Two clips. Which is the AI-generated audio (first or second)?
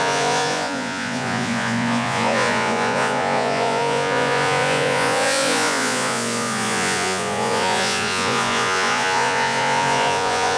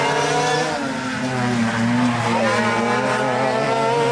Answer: first